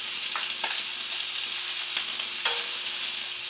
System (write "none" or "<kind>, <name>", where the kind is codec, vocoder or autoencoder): none